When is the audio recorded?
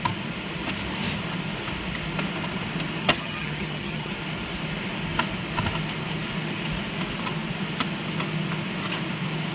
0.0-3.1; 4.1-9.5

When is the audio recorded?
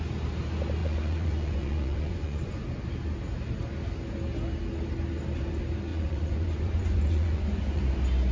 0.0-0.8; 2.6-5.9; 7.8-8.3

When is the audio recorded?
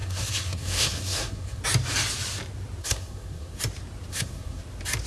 1.6-2.8; 3.6-4.1; 4.6-5.1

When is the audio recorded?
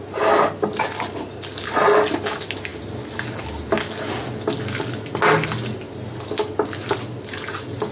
0.0-7.9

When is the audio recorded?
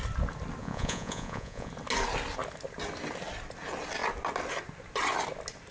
0.0-0.6; 1.7-5.7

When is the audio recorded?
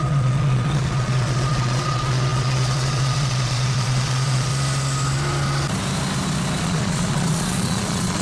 4.5-6.6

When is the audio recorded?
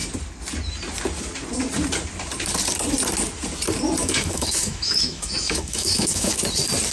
0.0-4.0; 6.4-6.9